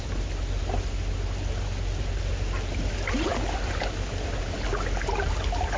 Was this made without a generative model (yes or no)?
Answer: yes